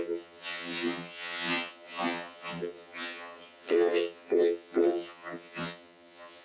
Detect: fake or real fake